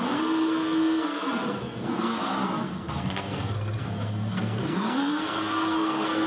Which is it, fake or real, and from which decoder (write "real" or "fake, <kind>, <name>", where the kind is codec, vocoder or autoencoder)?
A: fake, codec, SNAC